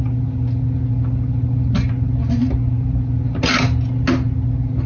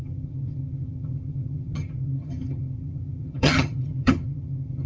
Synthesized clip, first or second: second